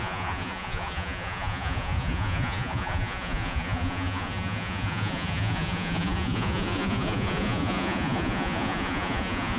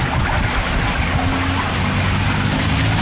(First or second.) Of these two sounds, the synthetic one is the first